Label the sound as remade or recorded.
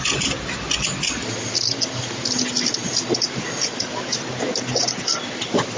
recorded